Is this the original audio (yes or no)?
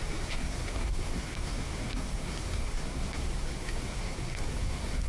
no